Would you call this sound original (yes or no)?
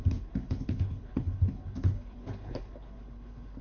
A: no